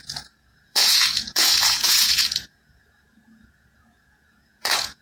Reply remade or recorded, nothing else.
remade